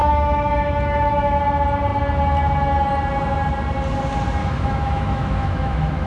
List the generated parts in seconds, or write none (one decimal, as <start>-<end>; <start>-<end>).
0.0-1.4; 4.4-6.1